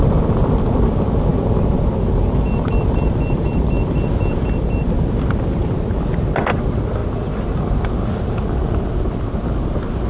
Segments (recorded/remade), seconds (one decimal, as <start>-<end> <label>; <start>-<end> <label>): 0.0-7.0 recorded; 7.0-7.8 remade; 7.8-10.1 recorded